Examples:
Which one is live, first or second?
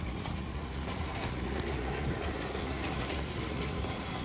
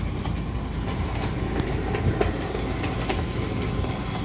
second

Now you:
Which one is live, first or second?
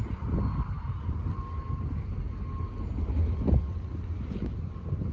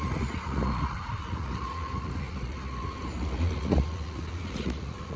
first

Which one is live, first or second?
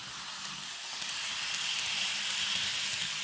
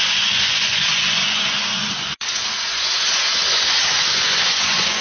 first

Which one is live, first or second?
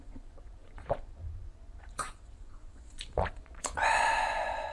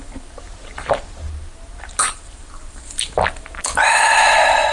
second